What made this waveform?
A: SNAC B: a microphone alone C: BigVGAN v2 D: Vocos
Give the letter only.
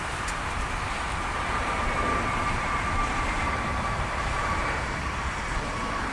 C